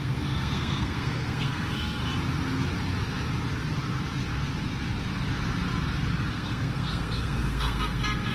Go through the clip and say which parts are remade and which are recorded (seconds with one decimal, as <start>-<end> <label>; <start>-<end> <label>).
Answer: 0.0-2.0 remade; 2.0-6.3 recorded; 6.3-8.3 remade